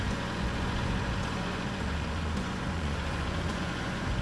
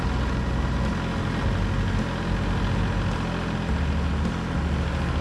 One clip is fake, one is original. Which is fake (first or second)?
first